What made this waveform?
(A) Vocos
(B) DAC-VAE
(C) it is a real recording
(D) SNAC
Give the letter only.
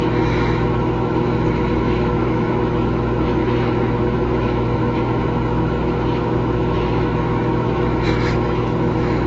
B